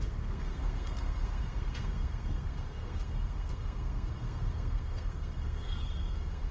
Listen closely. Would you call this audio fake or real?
fake